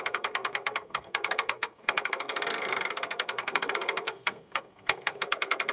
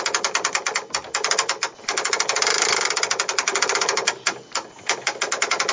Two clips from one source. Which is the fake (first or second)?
first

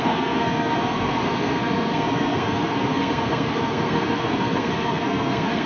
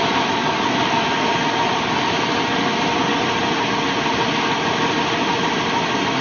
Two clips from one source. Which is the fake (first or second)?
first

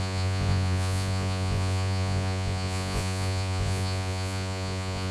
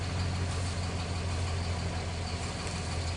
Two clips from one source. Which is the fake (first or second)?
first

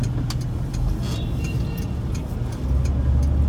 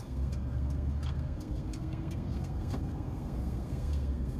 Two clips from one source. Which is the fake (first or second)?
second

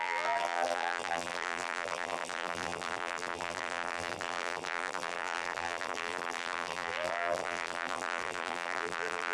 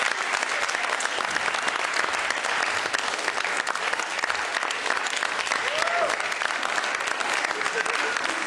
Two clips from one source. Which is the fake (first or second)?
first